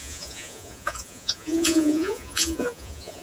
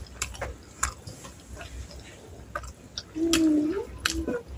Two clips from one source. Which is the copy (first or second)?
first